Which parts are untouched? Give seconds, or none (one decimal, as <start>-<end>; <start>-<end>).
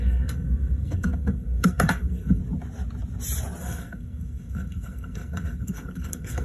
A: 2.4-3.6